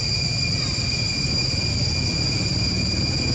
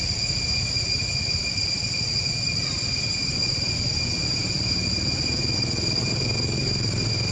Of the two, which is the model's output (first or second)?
second